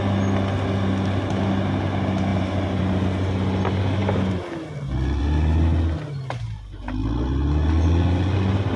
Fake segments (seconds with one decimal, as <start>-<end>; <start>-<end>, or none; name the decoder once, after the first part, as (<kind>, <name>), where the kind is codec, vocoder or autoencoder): none